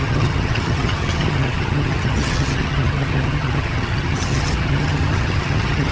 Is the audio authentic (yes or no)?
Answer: no